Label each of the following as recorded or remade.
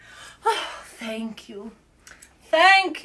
recorded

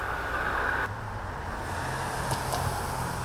recorded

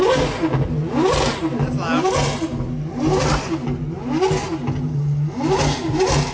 recorded